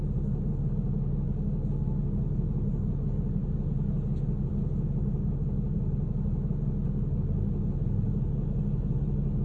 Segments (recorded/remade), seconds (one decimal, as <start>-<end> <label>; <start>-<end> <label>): 0.0-9.4 recorded